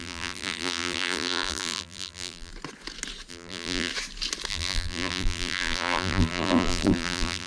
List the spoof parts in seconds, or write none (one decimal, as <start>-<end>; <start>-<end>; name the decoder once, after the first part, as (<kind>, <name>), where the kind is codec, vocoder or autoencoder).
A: 0.0-2.5 (vocoder, BigVGAN v2); 3.3-3.9; 4.5-7.5